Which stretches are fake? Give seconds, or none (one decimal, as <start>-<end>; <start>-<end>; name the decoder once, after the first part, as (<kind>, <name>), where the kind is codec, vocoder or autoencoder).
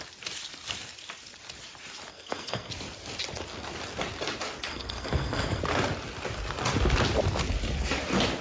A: 2.1-2.7 (codec, SNAC); 4.7-5.6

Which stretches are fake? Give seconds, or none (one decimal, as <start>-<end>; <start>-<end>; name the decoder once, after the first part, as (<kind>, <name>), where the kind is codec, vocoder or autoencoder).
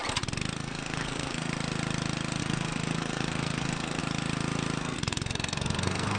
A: 0.6-1.5 (codec, SNAC); 2.4-4.0; 4.8-6.2